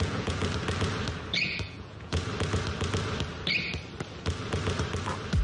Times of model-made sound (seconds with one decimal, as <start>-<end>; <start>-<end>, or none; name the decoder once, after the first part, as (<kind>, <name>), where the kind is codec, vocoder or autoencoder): 0.0-0.4 (vocoder, Vocos); 1.3-2.2